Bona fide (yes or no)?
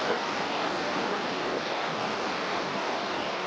no